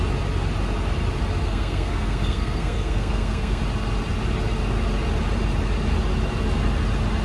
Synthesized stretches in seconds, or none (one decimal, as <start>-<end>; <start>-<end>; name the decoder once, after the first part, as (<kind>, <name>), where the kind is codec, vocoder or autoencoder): 1.4-3.6 (codec, SNAC)